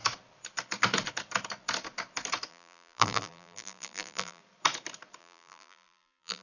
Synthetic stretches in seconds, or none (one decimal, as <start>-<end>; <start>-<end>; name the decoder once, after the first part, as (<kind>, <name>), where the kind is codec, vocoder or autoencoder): 2.5-4.4 (vocoder, BigVGAN v2); 5.2-6.4